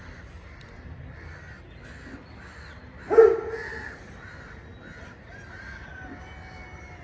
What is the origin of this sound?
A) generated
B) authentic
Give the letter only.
B